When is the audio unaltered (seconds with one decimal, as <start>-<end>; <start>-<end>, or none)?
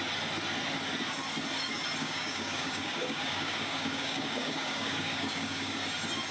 0.0-2.0; 5.8-6.3